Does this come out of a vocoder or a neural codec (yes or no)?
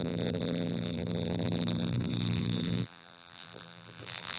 yes